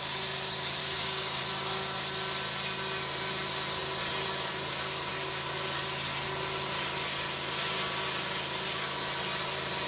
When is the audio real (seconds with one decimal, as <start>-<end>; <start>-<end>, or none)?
0.0-0.8; 1.4-9.9